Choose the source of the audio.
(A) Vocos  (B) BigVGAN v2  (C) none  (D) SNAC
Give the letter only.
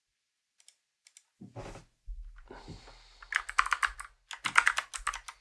C